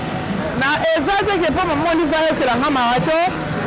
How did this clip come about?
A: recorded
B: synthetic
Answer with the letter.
A